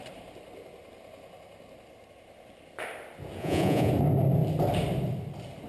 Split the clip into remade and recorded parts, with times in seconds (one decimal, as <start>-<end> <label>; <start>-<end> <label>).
0.0-3.4 recorded; 3.4-3.9 remade; 3.9-5.7 recorded